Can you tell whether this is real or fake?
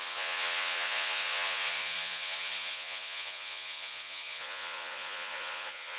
fake